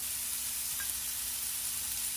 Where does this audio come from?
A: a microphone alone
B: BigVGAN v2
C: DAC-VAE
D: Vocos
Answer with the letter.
A